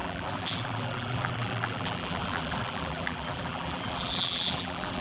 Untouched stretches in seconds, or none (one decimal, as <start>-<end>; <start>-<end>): none